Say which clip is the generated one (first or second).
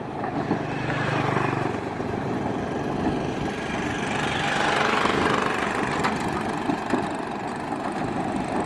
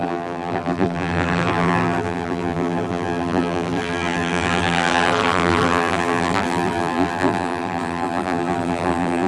second